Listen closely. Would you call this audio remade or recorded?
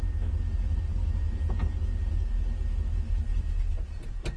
recorded